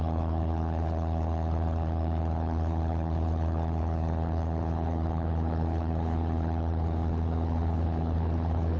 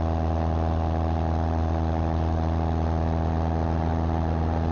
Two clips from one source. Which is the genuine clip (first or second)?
second